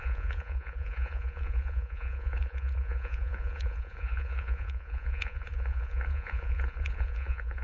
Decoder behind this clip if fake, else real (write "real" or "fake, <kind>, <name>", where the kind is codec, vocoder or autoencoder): fake, vocoder, Vocos